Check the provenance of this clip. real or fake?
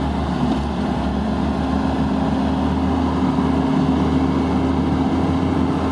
real